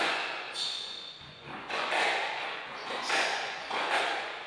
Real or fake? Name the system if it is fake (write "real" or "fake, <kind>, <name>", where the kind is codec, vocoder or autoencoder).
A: fake, vocoder, Vocos